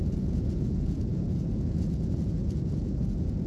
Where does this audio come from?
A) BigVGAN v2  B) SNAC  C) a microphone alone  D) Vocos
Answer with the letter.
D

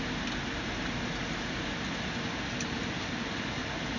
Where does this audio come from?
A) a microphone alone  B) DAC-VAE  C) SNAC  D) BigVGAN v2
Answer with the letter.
A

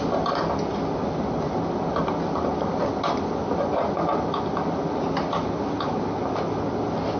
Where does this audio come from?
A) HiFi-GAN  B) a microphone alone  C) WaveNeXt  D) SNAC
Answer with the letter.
B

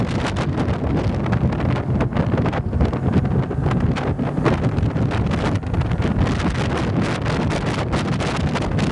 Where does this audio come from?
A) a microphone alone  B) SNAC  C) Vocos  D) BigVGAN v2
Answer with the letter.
A